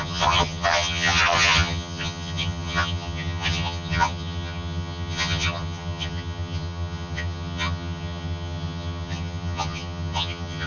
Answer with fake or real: fake